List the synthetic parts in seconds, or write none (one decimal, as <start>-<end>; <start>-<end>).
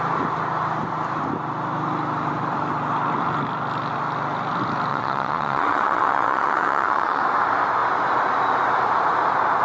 4.9-7.2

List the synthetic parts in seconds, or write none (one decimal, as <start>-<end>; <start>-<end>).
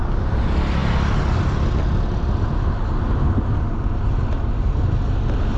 none